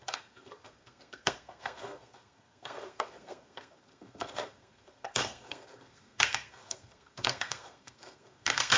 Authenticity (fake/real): fake